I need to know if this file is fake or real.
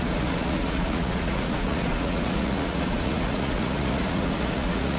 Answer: fake